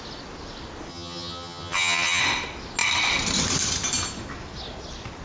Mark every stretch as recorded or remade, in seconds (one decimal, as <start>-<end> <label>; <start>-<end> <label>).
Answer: 0.0-0.9 recorded; 0.9-2.2 remade; 2.2-5.2 recorded